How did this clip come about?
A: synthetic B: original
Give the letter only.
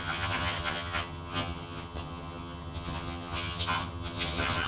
A